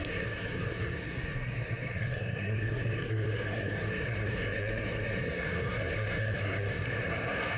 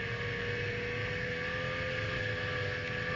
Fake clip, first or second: first